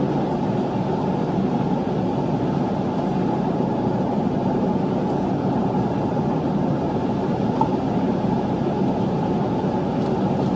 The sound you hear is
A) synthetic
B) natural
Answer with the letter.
B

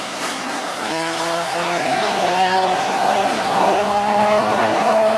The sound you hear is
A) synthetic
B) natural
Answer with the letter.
A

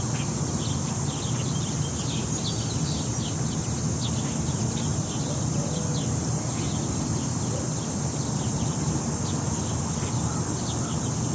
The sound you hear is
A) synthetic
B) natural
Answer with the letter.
B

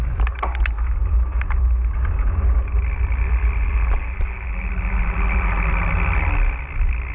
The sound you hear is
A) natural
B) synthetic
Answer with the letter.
A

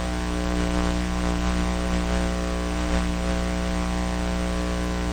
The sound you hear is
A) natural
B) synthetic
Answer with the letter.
A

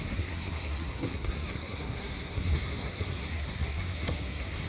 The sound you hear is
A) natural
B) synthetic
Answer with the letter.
B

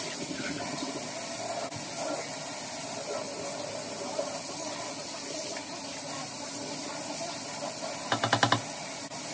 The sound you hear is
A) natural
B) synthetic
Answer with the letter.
A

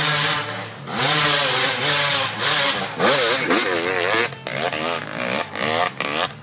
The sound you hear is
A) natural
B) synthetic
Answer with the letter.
A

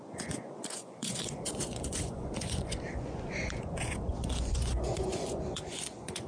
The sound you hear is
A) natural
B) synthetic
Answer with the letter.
B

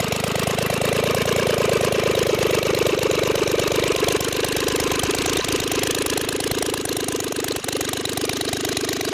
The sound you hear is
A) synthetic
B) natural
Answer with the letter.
B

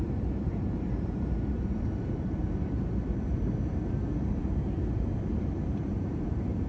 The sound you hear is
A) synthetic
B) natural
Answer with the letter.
A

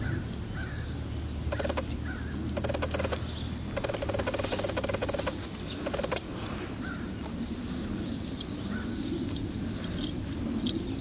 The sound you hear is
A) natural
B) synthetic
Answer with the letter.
A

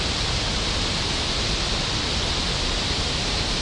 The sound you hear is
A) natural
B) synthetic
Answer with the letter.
A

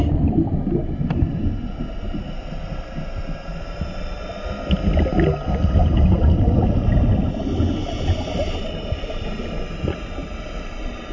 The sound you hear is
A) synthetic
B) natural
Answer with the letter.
B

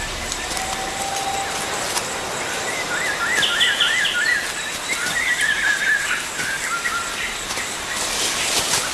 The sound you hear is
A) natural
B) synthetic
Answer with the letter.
A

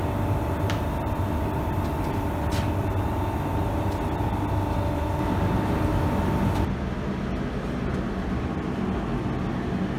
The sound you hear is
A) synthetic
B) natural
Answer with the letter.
B